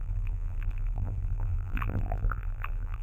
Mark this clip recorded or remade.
remade